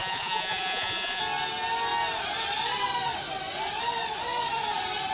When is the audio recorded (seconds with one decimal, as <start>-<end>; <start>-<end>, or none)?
1.2-5.1